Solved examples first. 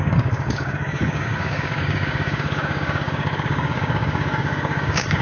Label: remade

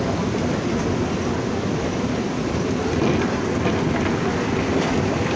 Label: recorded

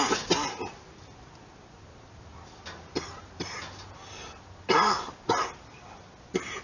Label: recorded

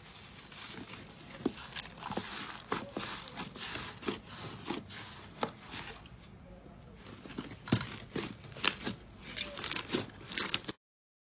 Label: recorded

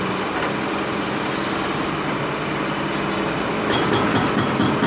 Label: recorded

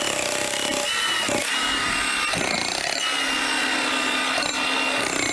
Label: recorded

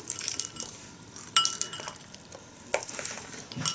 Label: recorded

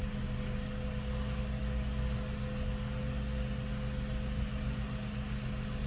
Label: recorded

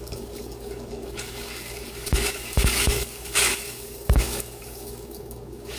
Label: remade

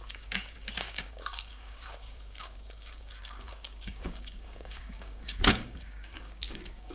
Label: remade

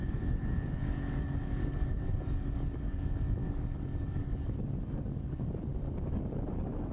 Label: remade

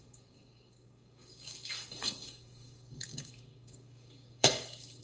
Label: remade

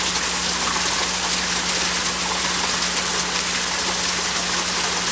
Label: recorded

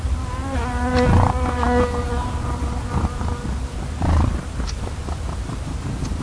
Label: recorded